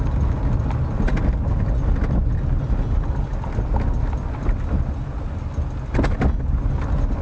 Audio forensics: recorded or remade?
recorded